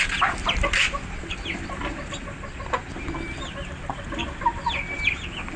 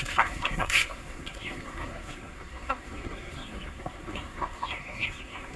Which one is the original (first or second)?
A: first